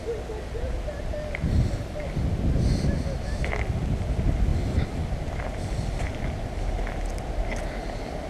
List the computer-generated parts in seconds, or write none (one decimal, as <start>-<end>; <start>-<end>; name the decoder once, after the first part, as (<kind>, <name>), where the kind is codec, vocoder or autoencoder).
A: none